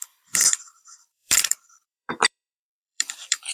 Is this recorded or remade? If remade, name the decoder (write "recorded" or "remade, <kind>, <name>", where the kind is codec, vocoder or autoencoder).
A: remade, vocoder, BigVGAN v2